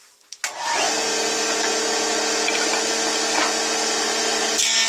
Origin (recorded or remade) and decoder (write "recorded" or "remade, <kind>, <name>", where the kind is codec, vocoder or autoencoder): recorded